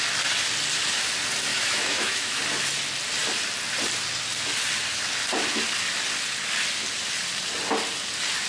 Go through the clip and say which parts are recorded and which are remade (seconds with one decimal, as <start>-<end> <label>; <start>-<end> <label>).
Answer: 0.0-1.5 recorded; 1.5-2.4 remade; 2.4-8.5 recorded